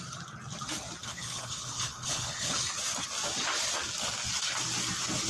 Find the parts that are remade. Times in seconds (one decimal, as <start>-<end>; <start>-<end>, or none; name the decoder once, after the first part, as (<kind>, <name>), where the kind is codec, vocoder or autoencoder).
1.0-2.7 (codec, HILCodec)